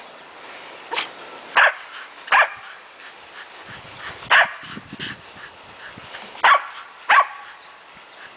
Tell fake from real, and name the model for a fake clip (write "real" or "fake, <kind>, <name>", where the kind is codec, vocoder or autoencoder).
real